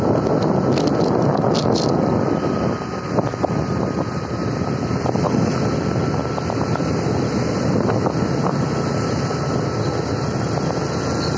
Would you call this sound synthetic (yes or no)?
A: no